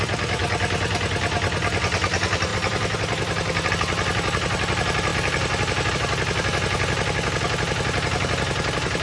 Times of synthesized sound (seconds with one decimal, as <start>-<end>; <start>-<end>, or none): 0.4-1.8; 2.5-3.7; 5.1-5.9